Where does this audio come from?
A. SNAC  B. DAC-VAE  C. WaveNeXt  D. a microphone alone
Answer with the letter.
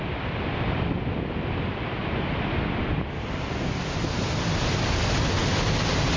D